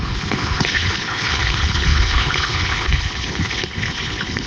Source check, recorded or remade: remade